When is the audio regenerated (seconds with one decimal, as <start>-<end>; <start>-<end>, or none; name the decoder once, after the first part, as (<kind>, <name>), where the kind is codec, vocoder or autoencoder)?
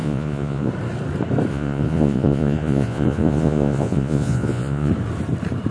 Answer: 0.0-0.7 (vocoder, Vocos); 1.5-4.9